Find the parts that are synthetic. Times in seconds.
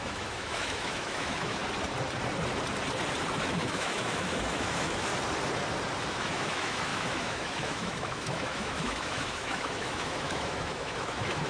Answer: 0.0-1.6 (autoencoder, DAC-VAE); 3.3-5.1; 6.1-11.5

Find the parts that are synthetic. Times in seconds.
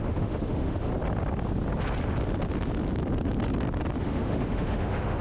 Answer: 0.0-0.9 (autoencoder, DAC-VAE); 4.0-5.2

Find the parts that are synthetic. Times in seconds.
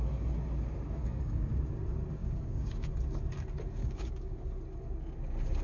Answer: 1.0-1.5 (codec, DAC); 2.2-2.9; 3.8-4.3